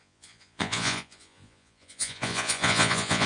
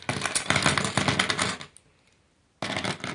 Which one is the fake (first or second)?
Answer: first